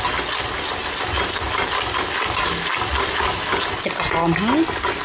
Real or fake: real